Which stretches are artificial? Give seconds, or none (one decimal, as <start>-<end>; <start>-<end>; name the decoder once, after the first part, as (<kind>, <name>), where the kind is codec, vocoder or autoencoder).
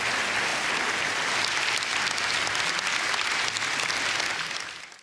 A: 0.5-2.7 (vocoder, BigVGAN v2)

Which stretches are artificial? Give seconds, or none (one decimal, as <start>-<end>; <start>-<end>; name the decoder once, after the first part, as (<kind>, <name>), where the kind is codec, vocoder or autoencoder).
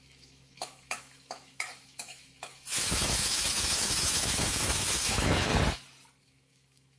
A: 0.0-5.5 (autoencoder, DAC-VAE); 6.2-7.0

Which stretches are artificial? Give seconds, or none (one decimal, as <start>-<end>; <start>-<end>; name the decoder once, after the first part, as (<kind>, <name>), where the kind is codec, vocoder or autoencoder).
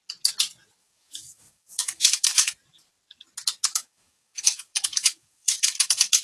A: 0.8-2.5 (codec, DAC); 3.7-6.2